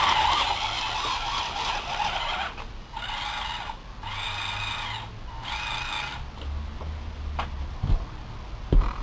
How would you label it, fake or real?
real